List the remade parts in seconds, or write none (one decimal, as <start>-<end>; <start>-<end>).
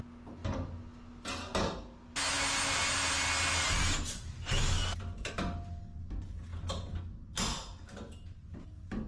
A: none